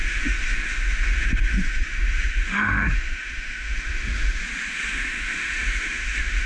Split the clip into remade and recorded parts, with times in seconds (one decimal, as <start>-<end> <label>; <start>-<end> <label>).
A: 0.0-4.4 remade; 4.4-4.9 recorded; 4.9-6.5 remade